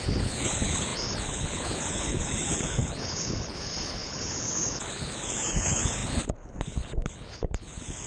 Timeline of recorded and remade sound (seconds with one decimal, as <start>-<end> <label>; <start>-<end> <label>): 0.0-8.1 remade

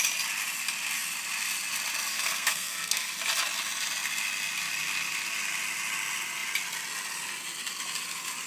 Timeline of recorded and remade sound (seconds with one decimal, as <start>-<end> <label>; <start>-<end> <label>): 0.0-2.1 recorded; 2.1-3.1 remade; 3.1-8.5 recorded

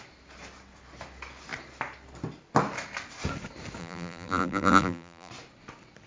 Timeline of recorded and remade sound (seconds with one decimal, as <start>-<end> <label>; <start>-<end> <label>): 0.0-3.8 recorded; 3.8-5.3 remade; 5.3-6.1 recorded

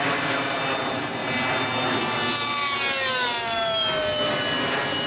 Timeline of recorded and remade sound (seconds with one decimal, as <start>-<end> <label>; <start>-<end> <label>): 0.0-5.1 recorded

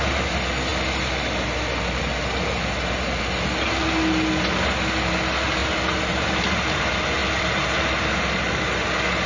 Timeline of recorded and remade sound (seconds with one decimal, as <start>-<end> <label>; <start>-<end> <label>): 0.0-5.6 recorded; 5.6-6.8 remade; 6.8-7.2 recorded; 7.2-7.7 remade; 7.7-9.3 recorded

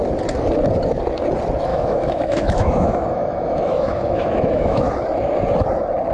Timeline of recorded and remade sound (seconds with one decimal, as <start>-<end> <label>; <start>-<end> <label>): 0.0-1.7 recorded; 1.7-4.9 remade; 4.9-6.1 recorded